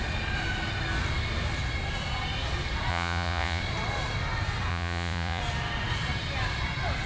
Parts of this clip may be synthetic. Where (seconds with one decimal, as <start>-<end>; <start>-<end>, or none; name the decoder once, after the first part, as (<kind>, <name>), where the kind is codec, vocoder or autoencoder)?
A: 2.9-3.6 (vocoder, Vocos); 4.7-5.4